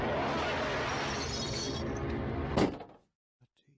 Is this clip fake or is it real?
real